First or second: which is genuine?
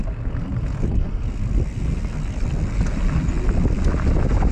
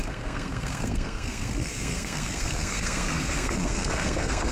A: first